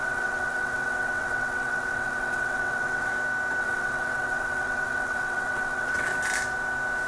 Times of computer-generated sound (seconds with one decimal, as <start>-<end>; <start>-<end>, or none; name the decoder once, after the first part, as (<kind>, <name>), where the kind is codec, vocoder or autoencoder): 0.0-3.1 (vocoder, WaveNeXt); 3.6-6.1